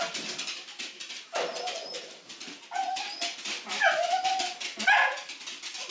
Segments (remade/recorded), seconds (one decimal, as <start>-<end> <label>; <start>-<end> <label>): 0.0-5.9 recorded